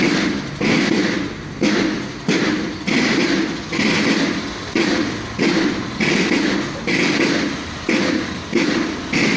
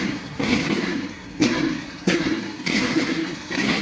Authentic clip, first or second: first